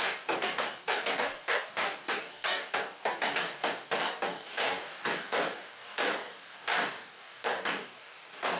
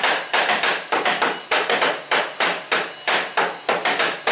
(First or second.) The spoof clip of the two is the first